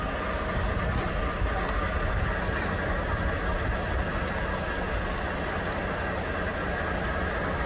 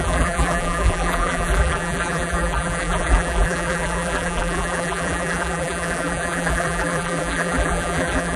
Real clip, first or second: first